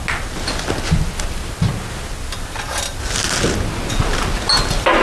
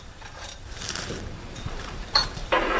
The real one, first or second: first